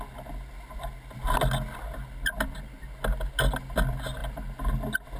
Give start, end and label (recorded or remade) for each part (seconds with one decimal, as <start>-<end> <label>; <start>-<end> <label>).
0.0-5.2 recorded